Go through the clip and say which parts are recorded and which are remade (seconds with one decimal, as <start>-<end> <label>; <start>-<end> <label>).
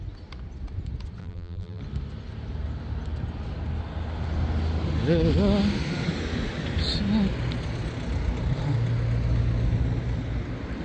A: 0.0-1.2 recorded; 1.2-1.8 remade; 1.8-10.8 recorded